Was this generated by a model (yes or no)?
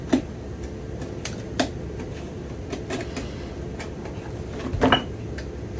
no